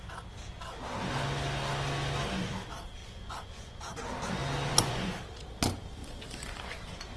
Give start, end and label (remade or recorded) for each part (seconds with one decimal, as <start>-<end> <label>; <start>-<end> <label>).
0.0-3.0 recorded; 3.0-4.0 remade; 4.0-4.7 recorded; 4.7-5.2 remade; 5.2-6.0 recorded; 6.0-7.2 remade